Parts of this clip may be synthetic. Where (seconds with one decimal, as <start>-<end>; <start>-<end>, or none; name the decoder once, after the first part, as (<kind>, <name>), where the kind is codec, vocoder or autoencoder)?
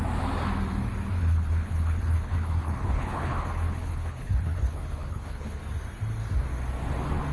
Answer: 1.2-5.6 (codec, HILCodec)